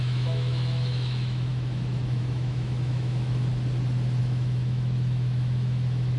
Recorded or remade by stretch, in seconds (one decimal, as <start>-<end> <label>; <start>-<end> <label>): 0.0-3.5 remade; 3.5-4.2 recorded; 4.2-6.2 remade